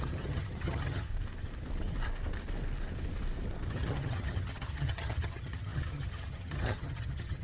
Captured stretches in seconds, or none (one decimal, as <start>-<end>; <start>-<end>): 1.1-3.7